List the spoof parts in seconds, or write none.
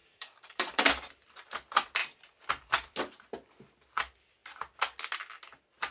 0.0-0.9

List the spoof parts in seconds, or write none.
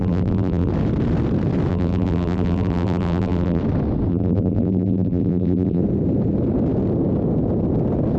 0.0-0.7; 1.7-3.6; 4.1-5.8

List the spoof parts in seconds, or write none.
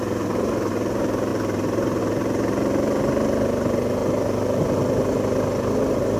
none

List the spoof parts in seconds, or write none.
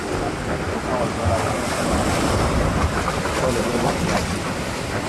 none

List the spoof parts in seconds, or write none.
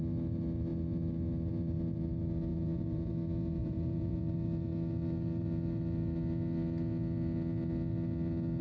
2.5-3.1; 3.6-4.3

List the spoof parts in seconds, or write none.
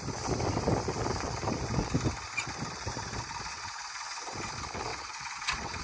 3.5-4.5; 4.9-5.8